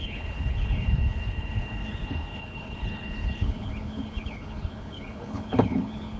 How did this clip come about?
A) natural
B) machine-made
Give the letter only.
B